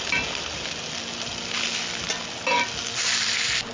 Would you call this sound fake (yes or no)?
no